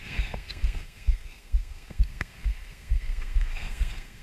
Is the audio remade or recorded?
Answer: remade